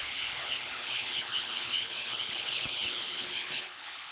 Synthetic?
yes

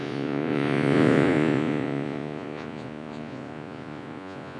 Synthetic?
yes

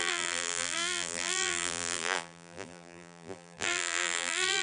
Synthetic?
yes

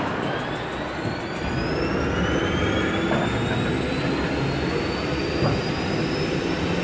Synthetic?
no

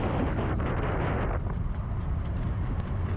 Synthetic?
no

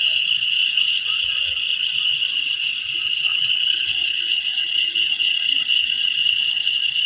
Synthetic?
yes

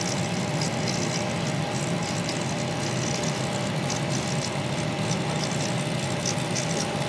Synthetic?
no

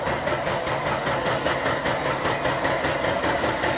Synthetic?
no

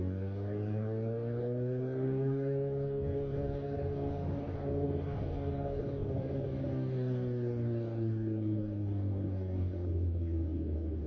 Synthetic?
yes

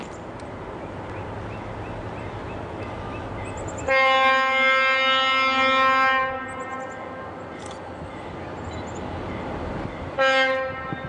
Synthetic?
no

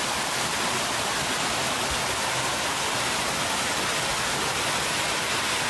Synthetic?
no